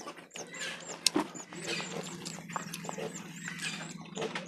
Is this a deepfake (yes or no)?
no